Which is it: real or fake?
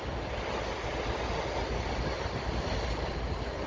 real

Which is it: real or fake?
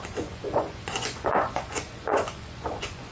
fake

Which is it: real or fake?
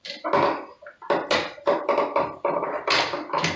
real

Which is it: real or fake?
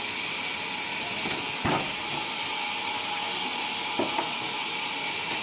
real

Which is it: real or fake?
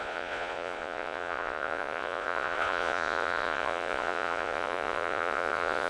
fake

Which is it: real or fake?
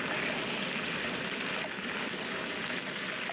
real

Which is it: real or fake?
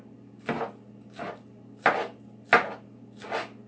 real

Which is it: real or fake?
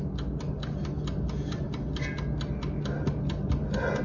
real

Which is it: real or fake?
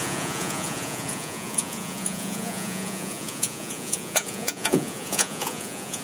fake